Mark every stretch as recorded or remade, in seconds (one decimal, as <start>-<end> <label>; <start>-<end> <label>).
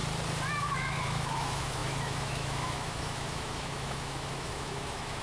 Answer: 0.0-0.5 recorded; 0.5-5.2 remade